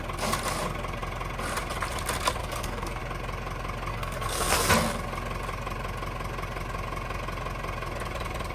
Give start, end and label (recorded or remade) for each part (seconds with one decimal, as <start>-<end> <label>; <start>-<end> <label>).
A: 0.0-2.4 recorded; 2.4-3.0 remade; 3.0-3.9 recorded; 3.9-4.7 remade; 4.7-8.5 recorded